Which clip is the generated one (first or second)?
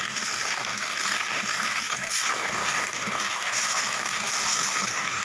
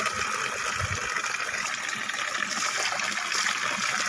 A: first